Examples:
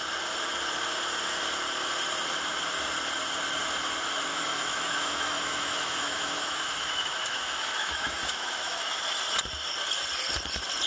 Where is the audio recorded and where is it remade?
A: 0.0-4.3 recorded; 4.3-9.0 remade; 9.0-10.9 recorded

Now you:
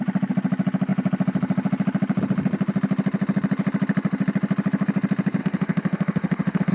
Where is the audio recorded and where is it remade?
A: 0.0-5.4 recorded; 5.4-6.7 remade

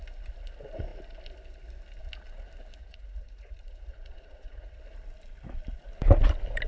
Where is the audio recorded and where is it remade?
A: 0.0-2.8 recorded; 2.8-4.8 remade; 4.8-6.7 recorded

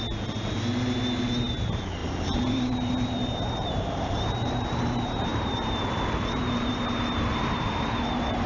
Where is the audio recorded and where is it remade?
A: 0.0-1.2 recorded; 1.2-8.5 remade